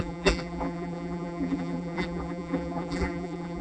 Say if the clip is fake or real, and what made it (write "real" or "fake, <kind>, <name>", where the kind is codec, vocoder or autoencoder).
fake, vocoder, BigVGAN v2